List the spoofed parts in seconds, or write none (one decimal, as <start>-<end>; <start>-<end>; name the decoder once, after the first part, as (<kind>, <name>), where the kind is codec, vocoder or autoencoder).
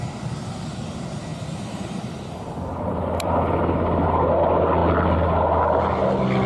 1.3-3.6 (vocoder, BigVGAN v2)